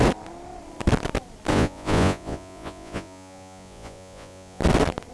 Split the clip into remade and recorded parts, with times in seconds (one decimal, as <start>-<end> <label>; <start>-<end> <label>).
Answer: 0.0-1.5 recorded; 1.5-4.6 remade; 4.6-5.1 recorded